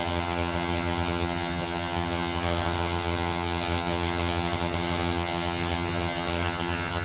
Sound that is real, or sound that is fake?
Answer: fake